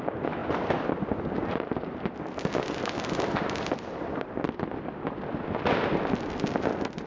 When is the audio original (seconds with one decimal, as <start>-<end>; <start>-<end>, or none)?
0.0-7.1